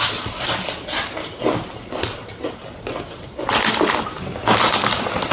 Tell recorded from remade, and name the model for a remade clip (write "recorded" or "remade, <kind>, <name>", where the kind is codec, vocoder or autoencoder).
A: recorded